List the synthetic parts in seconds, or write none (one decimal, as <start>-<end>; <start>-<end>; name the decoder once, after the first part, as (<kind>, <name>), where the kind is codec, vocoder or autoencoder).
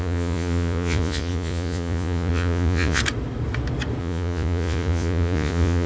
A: 0.0-3.0 (vocoder, Vocos); 4.0-5.9